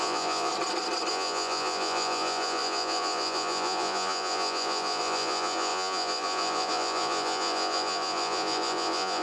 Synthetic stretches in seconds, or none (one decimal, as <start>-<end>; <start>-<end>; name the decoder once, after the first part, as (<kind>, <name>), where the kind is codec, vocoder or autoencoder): 0.0-0.5 (vocoder, Vocos); 1.1-9.2